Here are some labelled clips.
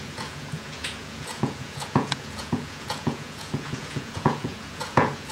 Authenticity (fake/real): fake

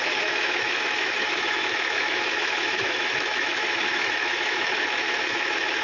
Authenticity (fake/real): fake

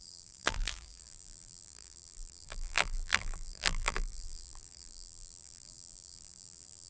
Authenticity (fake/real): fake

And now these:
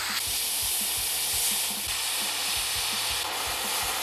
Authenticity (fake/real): real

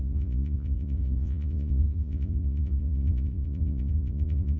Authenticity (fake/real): fake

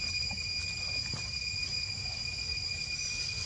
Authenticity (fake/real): real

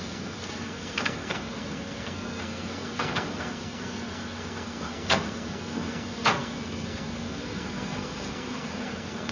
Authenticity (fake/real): fake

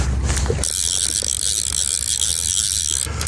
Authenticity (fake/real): real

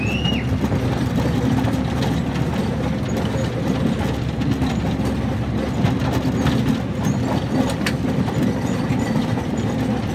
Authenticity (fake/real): real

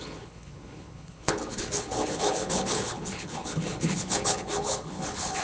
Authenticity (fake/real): fake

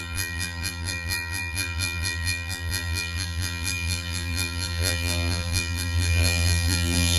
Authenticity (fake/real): fake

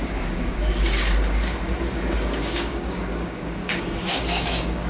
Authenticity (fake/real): fake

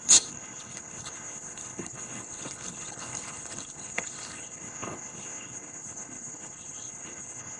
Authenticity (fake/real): fake